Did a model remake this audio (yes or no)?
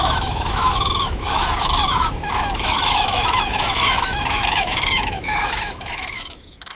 yes